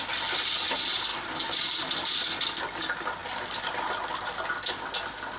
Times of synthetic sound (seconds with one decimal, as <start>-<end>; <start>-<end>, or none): none